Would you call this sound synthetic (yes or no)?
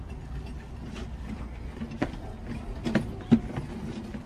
no